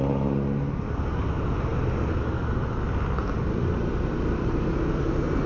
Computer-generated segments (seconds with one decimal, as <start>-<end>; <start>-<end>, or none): none